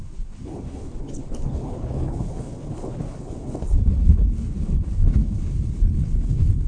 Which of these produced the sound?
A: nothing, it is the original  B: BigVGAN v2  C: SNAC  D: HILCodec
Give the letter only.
D